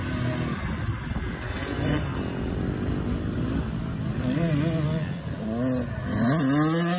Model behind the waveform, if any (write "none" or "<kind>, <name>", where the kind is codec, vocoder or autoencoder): none